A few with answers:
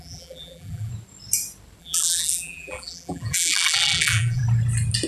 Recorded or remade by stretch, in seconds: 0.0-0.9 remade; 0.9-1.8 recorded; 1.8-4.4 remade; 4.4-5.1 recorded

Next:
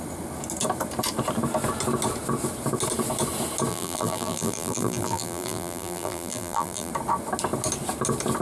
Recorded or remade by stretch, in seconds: 0.0-3.7 recorded; 3.7-6.9 remade; 6.9-8.4 recorded

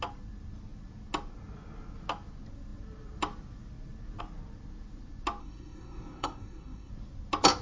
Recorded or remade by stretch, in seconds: 0.0-5.4 recorded; 5.4-6.9 remade; 6.9-7.6 recorded

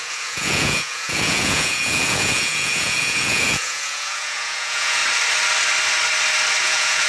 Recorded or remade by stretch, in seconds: 0.0-5.0 remade; 5.0-6.6 recorded; 6.6-7.1 remade

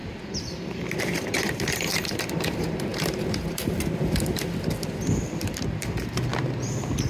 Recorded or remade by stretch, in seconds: 0.0-6.3 remade; 6.3-7.1 recorded

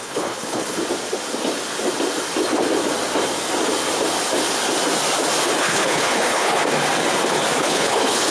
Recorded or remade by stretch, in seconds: 0.0-0.8 remade; 0.8-5.6 recorded; 5.6-6.6 remade; 6.6-7.6 recorded; 7.6-8.3 remade

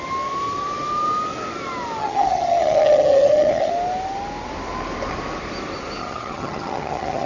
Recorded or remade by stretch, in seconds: 0.0-2.0 recorded; 2.0-3.7 remade; 3.7-6.0 recorded; 6.0-7.3 remade